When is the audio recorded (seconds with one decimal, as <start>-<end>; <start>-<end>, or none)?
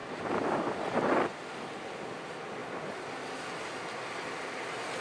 0.0-5.0